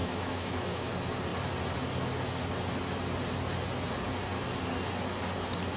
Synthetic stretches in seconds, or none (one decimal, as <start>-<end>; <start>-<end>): 0.0-0.9

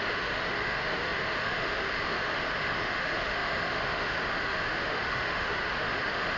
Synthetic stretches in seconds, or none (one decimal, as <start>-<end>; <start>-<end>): 0.0-6.4

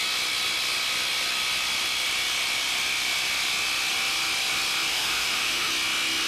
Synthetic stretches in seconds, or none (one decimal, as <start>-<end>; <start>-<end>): 4.9-5.7